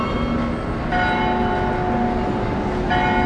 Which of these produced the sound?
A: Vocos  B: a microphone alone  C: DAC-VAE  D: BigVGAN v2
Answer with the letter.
B